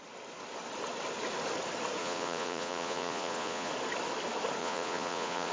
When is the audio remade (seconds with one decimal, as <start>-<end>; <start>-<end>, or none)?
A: 2.0-3.7; 4.6-5.5